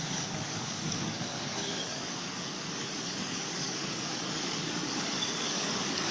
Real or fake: fake